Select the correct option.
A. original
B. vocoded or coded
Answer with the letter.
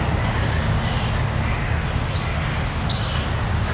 A